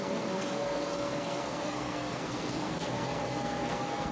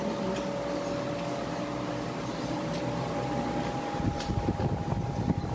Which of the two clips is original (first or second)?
second